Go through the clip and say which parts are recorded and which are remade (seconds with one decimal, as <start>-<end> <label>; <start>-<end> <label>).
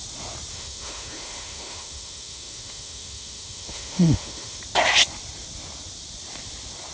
0.0-0.5 recorded; 0.5-4.6 remade; 4.6-6.9 recorded